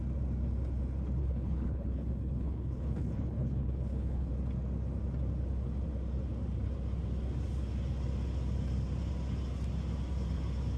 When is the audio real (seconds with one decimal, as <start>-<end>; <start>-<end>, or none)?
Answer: 0.0-1.2; 4.3-10.8